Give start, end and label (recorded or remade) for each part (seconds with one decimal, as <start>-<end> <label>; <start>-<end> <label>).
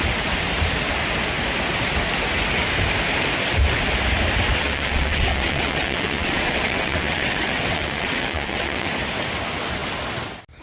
0.0-4.5 recorded; 4.5-8.9 remade; 8.9-10.6 recorded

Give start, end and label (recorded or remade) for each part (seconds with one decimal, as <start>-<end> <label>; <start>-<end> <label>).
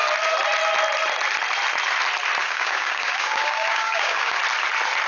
0.0-2.4 recorded; 2.4-4.4 remade; 4.4-5.1 recorded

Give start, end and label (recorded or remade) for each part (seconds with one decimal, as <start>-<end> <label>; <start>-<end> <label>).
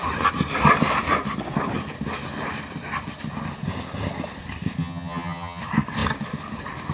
0.0-4.8 recorded; 4.8-5.6 remade; 5.6-6.9 recorded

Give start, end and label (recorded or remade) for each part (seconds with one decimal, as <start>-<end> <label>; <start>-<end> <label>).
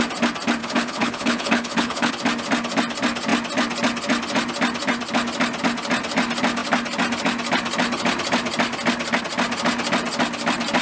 0.0-0.6 recorded; 0.6-2.1 remade; 2.1-10.8 recorded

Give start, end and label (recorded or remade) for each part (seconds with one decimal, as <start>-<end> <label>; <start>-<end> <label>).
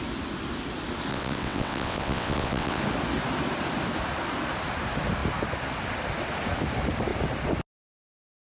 0.0-1.1 recorded; 1.1-2.8 remade; 2.8-8.6 recorded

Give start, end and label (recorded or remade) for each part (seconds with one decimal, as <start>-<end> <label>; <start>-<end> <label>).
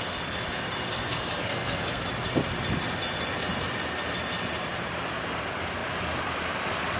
0.0-0.9 recorded; 0.9-2.0 remade; 2.0-7.0 recorded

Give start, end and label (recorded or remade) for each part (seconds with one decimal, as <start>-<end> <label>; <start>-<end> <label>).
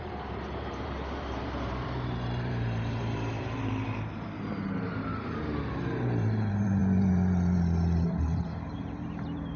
0.0-9.6 remade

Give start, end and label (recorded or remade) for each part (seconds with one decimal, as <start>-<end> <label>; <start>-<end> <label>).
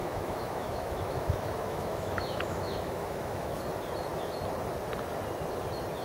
0.0-3.6 remade; 3.6-6.0 recorded